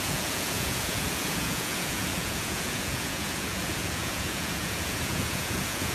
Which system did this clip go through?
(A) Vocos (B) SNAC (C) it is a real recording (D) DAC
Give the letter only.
A